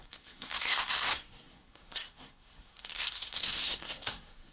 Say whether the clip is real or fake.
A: fake